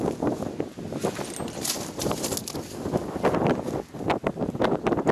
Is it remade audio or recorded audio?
recorded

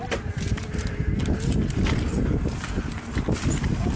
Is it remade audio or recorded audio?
recorded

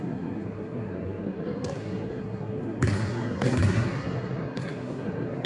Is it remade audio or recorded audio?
remade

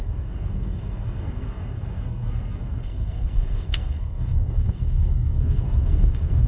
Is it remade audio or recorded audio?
remade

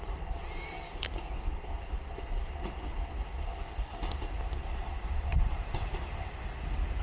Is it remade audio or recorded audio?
recorded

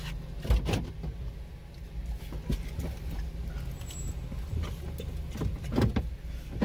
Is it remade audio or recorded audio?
recorded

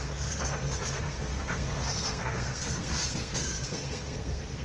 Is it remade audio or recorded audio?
remade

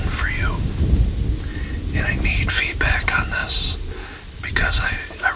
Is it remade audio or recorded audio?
recorded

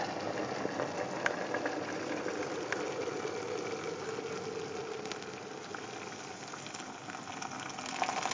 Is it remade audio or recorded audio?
recorded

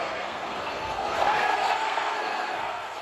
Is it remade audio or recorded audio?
remade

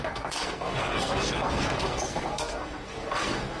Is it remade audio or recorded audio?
remade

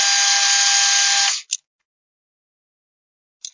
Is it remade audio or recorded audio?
recorded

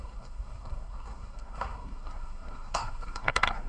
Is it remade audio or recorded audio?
remade